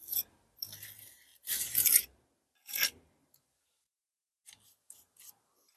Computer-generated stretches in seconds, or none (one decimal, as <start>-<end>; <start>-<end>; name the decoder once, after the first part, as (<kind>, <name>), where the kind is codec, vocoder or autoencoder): none